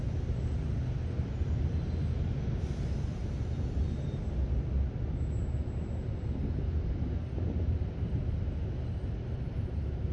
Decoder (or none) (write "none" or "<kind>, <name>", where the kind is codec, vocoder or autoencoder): none